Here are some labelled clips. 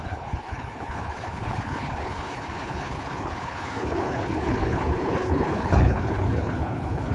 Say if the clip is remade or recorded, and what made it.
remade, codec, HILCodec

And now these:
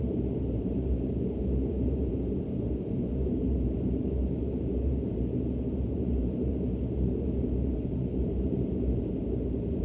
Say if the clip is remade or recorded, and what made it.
remade, vocoder, BigVGAN v2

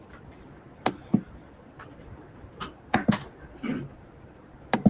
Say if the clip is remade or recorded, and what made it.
remade, vocoder, BigVGAN v2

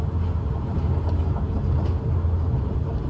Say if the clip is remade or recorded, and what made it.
recorded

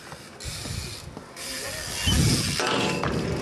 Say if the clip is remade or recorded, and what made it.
recorded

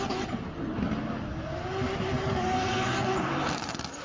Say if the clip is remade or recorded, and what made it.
recorded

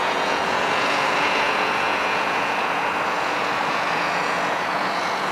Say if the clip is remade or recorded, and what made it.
remade, vocoder, Vocos